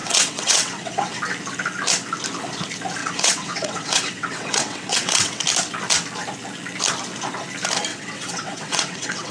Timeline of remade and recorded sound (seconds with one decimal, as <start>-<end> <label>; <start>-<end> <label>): 0.0-1.2 remade; 1.2-3.0 recorded; 3.0-5.4 remade; 5.4-7.9 recorded; 7.9-9.3 remade